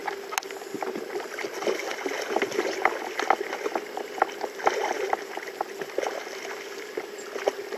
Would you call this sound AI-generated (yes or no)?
no